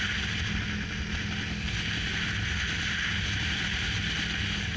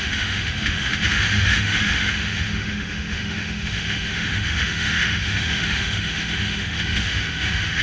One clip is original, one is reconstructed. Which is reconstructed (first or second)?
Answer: second